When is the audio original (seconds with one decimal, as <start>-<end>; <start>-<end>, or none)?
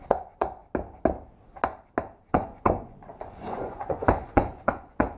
0.6-2.3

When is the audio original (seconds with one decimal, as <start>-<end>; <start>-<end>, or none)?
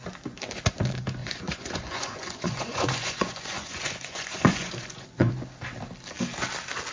0.0-1.2; 5.3-6.9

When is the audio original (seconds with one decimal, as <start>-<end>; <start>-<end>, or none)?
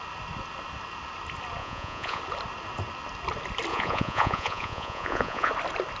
0.0-1.6; 2.2-3.7; 5.5-6.0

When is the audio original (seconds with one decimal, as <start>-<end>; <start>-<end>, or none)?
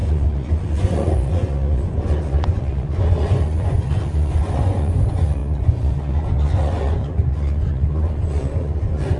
none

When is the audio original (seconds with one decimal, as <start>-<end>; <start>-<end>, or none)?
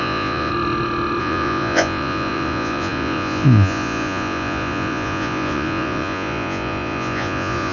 0.5-1.2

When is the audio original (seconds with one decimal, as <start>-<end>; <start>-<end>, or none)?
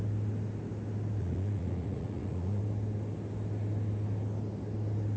0.0-1.2; 2.6-5.2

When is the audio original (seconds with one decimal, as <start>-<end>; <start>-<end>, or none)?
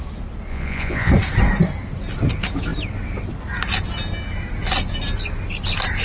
0.0-0.5; 1.1-6.0